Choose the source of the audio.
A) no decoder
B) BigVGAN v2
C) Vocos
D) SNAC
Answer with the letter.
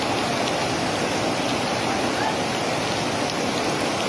A